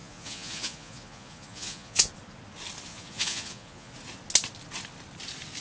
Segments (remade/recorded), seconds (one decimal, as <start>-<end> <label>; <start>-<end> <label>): 0.0-2.1 remade; 2.1-2.9 recorded; 2.9-3.9 remade; 3.9-5.6 recorded